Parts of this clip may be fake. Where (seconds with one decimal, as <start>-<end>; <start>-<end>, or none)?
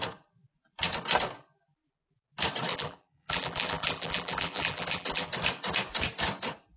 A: 2.7-5.3